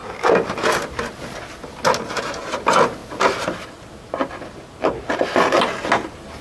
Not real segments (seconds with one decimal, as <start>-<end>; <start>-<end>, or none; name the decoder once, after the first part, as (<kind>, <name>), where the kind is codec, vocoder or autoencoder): none